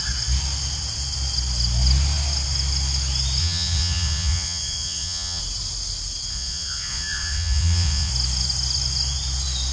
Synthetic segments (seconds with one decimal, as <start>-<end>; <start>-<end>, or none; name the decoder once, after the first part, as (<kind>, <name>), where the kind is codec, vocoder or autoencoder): 3.4-5.4 (vocoder, Vocos); 6.3-8.1